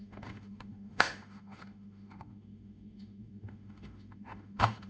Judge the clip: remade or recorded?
remade